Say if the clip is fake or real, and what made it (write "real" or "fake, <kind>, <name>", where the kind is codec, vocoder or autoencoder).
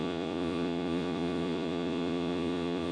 fake, vocoder, Vocos